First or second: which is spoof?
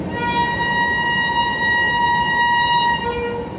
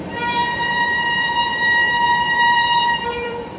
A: second